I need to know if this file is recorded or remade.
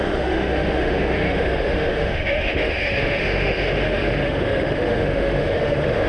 remade